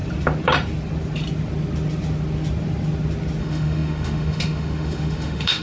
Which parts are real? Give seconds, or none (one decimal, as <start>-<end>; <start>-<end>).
0.0-3.4